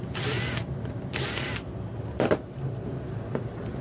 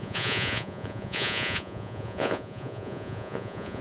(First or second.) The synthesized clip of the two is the second